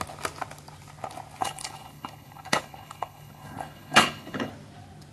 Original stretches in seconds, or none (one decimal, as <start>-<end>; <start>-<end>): 0.0-1.4; 4.5-5.1